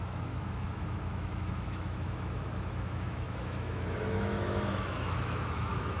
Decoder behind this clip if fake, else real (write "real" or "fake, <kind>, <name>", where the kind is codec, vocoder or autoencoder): fake, autoencoder, DAC-VAE